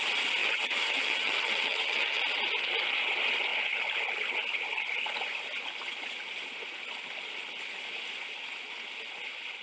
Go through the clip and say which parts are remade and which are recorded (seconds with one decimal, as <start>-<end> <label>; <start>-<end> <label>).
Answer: 0.0-0.4 recorded; 0.4-2.2 remade; 2.2-9.6 recorded